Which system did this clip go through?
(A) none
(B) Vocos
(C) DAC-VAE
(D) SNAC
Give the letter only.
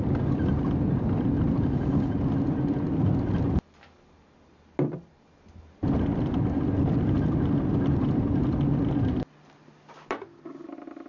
A